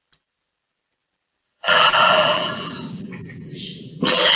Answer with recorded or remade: remade